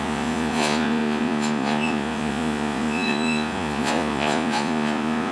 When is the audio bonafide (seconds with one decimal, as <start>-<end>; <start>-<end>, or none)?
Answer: none